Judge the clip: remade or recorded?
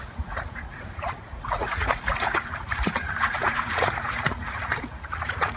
remade